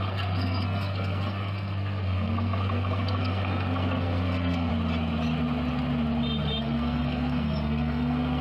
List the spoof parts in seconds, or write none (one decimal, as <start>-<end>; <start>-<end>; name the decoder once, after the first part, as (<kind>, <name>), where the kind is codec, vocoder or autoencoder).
0.0-4.7 (codec, SNAC); 6.6-8.4

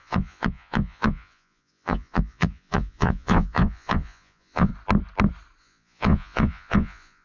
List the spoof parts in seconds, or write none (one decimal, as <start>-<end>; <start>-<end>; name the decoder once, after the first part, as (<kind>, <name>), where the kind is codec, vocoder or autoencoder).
0.0-4.7 (vocoder, Vocos); 5.6-7.2

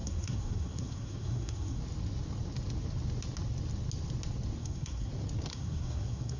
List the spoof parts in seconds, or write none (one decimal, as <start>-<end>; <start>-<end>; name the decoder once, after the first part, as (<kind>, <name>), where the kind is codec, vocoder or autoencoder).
0.0-1.8 (codec, SNAC); 4.6-5.1; 5.5-6.4

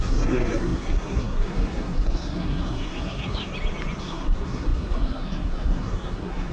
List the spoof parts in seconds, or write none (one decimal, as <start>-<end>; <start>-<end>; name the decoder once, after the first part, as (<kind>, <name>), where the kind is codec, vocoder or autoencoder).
0.0-3.5 (codec, SNAC); 4.0-6.5